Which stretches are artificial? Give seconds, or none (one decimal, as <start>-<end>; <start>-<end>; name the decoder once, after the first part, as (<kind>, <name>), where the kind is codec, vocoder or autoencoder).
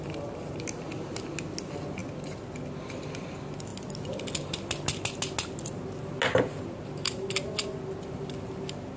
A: none